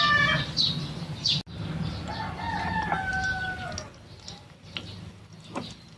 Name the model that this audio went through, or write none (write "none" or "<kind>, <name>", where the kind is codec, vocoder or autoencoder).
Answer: none